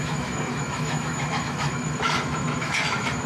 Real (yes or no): no